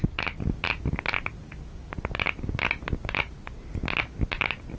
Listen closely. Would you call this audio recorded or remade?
recorded